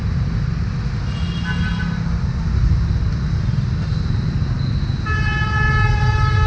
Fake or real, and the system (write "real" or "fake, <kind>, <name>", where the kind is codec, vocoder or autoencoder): real